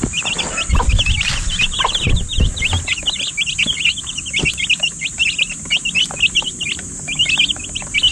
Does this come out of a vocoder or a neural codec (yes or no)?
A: no